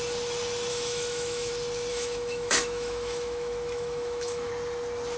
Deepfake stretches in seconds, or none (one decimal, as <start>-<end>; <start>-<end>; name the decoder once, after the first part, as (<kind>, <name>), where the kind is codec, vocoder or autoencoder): 0.7-1.5 (autoencoder, DAC-VAE); 1.9-4.5